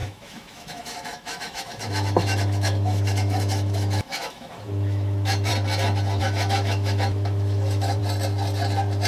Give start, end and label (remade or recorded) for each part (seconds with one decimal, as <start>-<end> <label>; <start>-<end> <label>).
0.0-5.5 remade; 5.5-6.2 recorded; 6.2-8.0 remade; 8.0-9.1 recorded